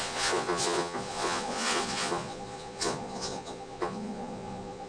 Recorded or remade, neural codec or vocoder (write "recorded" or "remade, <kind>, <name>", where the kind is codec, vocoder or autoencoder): remade, vocoder, Vocos